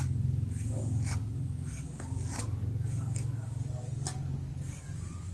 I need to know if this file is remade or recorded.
remade